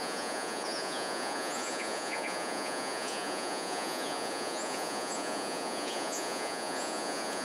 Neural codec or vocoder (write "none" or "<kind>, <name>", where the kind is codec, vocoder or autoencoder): vocoder, Vocos